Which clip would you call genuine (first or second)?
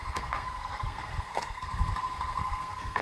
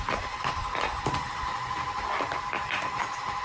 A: second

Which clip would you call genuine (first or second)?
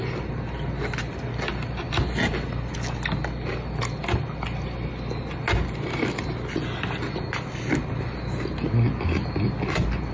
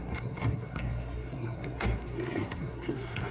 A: first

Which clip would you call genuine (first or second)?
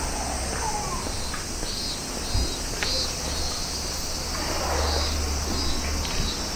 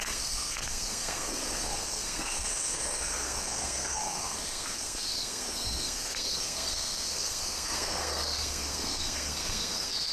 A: first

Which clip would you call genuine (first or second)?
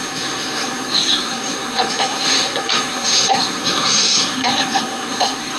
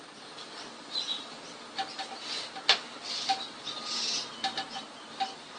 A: second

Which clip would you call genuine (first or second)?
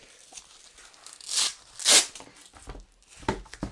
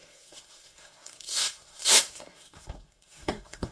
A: first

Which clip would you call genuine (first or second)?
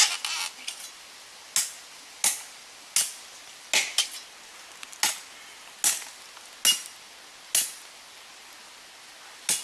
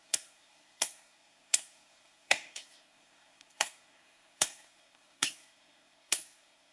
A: first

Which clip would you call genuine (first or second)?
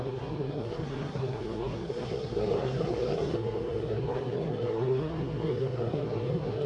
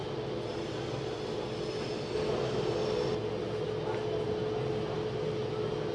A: second